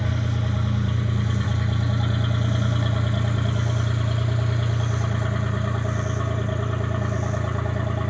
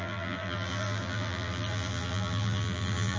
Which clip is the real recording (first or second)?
first